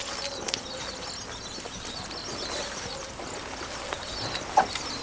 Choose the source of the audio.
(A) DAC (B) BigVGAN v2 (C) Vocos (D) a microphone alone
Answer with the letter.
D